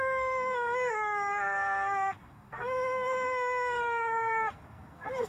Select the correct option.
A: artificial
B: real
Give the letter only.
A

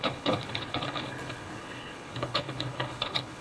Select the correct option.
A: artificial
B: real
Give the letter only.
A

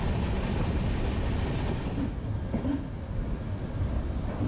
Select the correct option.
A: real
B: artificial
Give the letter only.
A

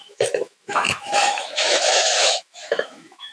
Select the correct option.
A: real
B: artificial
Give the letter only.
B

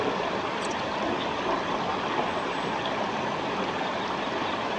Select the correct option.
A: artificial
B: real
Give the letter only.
B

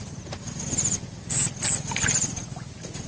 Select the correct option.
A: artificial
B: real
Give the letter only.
B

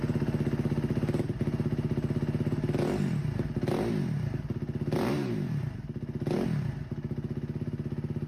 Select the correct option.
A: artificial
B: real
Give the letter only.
B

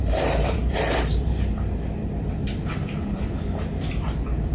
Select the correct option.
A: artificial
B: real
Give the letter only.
A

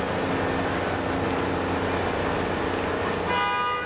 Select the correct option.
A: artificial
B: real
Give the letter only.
B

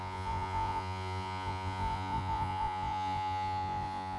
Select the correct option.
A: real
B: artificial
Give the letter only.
B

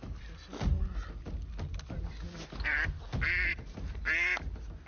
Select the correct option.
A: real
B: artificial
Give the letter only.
A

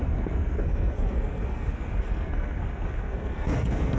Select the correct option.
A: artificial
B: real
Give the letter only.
A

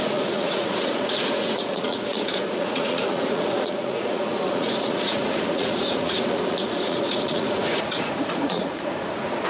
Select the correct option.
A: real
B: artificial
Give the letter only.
B